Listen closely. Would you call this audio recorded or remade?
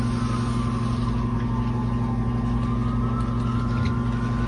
recorded